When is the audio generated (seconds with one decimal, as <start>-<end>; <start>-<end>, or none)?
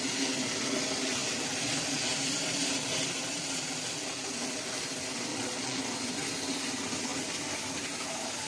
5.3-5.8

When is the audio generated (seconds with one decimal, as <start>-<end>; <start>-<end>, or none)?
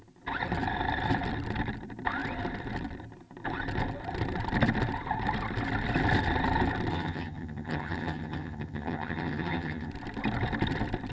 6.9-9.9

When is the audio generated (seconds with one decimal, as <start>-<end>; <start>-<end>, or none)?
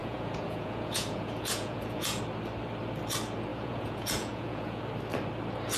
0.0-2.2; 3.5-4.8